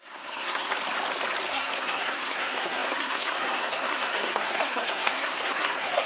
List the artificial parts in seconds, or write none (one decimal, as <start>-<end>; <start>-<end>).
0.0-0.7; 1.5-6.1